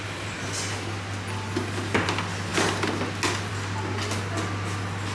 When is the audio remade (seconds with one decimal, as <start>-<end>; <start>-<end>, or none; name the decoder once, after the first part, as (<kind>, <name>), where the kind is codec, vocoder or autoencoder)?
none